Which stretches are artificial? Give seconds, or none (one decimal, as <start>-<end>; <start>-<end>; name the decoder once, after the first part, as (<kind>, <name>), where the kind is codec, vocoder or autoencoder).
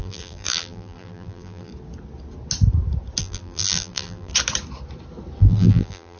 0.0-1.7 (vocoder, BigVGAN v2); 3.2-4.3; 5.4-6.2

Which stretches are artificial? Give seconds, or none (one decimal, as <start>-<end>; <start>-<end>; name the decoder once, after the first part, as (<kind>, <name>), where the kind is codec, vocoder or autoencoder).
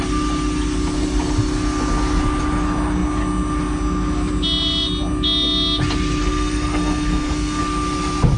6.2-7.6 (codec, SNAC)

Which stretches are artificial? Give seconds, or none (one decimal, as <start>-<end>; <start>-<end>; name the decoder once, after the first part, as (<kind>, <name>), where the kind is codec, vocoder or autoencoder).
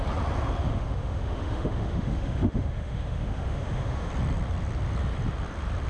0.6-4.1 (autoencoder, DAC-VAE)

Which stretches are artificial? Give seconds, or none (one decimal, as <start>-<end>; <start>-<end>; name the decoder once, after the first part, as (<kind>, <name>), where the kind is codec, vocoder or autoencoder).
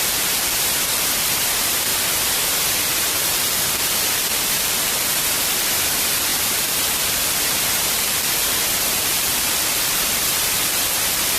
0.0-1.9 (vocoder, BigVGAN v2); 2.7-11.4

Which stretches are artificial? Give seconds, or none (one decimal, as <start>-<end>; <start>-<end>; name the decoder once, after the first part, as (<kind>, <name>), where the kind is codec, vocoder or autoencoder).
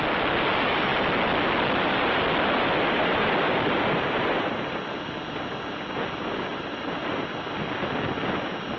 6.5-7.1 (vocoder, BigVGAN v2)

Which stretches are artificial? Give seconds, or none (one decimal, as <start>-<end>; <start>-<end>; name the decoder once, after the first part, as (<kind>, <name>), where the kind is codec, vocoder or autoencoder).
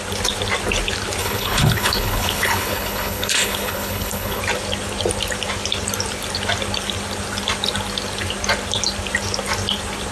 1.2-4.4 (codec, HILCodec)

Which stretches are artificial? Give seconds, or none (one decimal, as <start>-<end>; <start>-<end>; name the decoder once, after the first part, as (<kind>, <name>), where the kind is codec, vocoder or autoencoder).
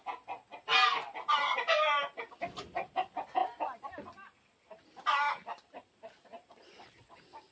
none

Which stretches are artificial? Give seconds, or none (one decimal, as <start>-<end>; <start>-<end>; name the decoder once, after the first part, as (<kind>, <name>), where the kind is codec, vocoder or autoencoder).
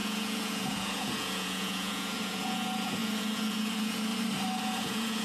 0.0-4.1 (vocoder, Vocos); 4.6-5.2